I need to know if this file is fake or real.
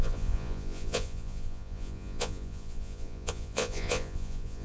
fake